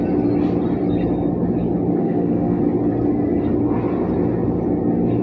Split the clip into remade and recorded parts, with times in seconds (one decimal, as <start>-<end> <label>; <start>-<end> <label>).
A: 0.0-2.0 recorded; 2.0-2.6 remade; 2.6-5.2 recorded